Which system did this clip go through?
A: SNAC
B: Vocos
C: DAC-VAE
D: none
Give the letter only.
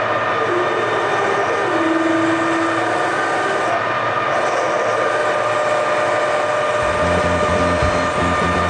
D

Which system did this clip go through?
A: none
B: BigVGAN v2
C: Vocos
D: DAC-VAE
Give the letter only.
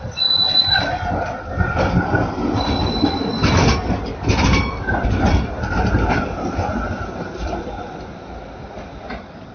A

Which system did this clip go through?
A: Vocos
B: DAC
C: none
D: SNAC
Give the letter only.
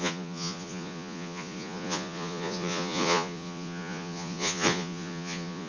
A